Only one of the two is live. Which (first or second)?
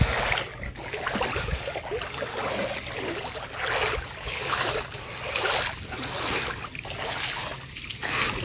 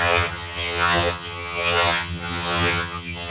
first